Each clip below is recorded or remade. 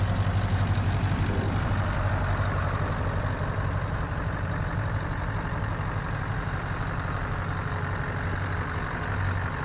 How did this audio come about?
recorded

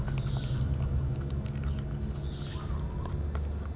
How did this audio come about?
recorded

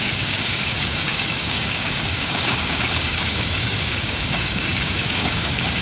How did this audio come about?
remade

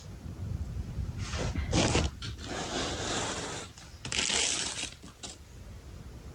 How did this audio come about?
recorded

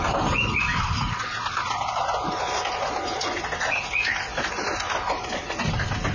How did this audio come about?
recorded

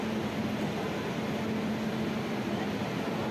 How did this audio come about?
recorded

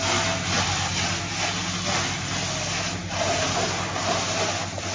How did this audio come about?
recorded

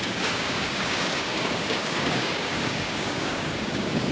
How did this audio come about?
remade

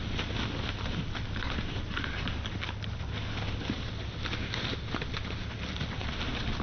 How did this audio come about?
recorded